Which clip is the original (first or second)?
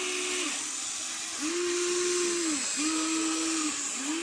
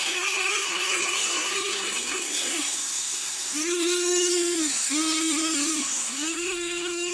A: first